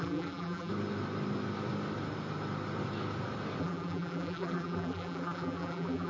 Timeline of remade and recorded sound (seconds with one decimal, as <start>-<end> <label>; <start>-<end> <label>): 0.0-0.7 remade; 0.7-3.6 recorded; 3.6-6.1 remade